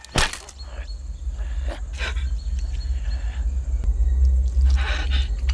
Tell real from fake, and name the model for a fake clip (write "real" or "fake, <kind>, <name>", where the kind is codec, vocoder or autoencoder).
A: real